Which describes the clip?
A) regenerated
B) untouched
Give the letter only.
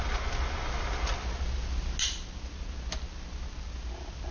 B